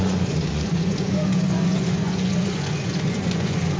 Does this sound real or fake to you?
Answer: fake